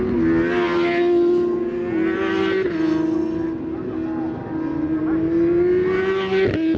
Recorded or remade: recorded